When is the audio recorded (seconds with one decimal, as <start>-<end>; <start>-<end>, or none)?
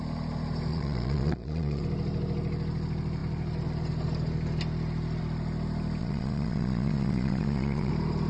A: 0.0-0.7; 1.8-6.0; 7.9-8.3